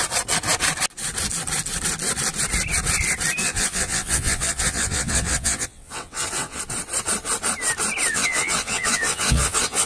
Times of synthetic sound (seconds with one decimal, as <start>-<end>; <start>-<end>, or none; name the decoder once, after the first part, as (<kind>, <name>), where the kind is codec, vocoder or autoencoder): 3.4-6.6 (vocoder, WaveNeXt); 8.1-9.9